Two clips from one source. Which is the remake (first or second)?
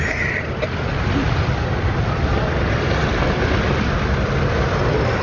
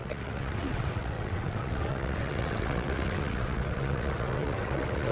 second